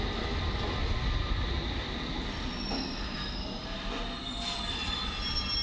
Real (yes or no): yes